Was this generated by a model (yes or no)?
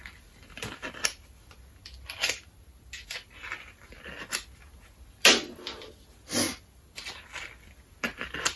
no